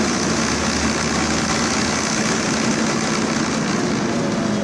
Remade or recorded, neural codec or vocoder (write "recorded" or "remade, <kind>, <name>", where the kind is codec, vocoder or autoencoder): recorded